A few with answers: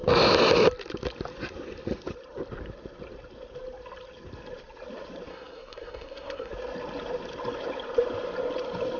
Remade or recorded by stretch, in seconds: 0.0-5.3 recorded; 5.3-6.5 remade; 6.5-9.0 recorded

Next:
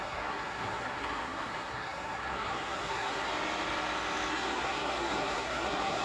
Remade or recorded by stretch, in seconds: 0.0-3.3 remade; 3.3-4.3 recorded; 4.3-6.0 remade

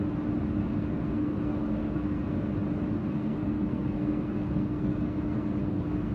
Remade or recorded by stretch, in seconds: 0.0-0.6 recorded; 0.6-2.5 remade; 2.5-3.0 recorded; 3.0-6.1 remade